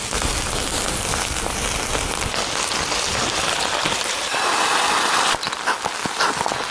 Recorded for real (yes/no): yes